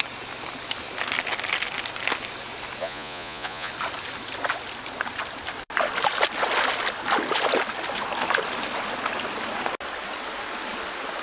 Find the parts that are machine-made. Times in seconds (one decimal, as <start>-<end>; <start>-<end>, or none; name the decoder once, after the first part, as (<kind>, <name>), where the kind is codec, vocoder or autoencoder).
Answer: 2.8-3.7 (vocoder, Vocos)